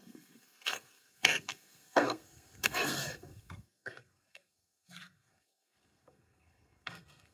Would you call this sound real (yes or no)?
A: no